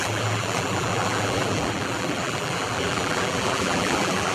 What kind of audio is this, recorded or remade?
remade